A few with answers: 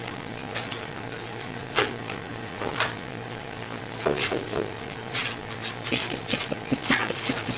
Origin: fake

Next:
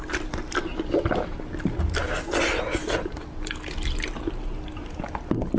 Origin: real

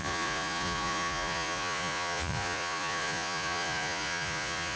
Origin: fake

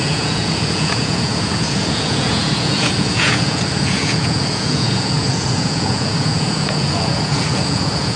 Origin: fake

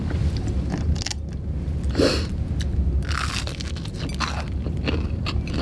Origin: real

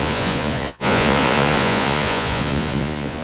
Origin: fake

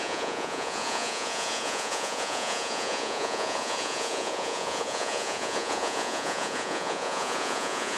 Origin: fake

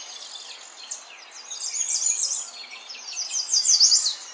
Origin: real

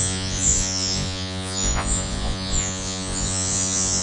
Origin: fake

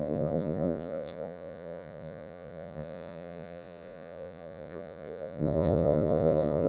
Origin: fake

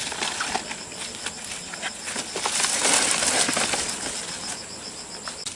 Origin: real